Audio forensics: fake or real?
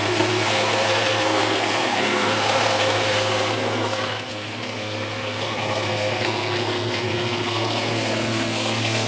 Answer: fake